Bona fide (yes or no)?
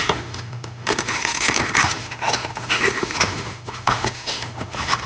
no